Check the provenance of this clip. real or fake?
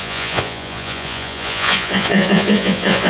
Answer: fake